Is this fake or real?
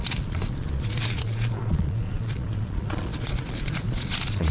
fake